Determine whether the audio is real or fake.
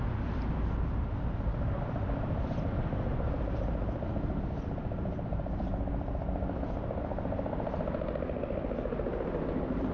fake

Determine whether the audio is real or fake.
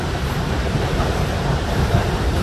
fake